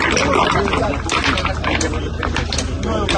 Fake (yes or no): no